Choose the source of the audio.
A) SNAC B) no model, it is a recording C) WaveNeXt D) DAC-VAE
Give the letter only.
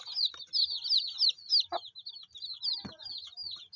B